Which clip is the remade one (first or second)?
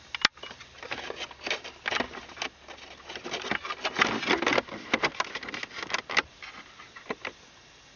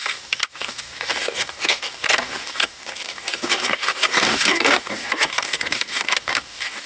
second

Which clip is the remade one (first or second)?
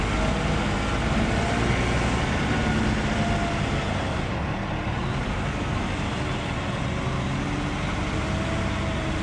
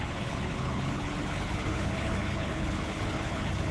second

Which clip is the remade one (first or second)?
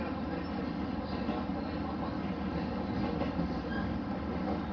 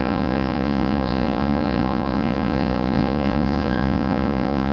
second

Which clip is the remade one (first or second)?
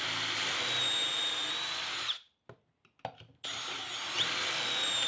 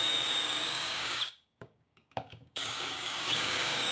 second